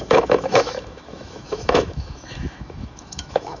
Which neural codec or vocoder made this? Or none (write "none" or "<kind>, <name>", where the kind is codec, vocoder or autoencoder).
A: autoencoder, DAC-VAE